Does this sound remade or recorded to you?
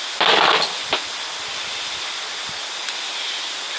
recorded